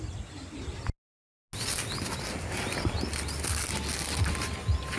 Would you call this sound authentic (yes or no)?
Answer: yes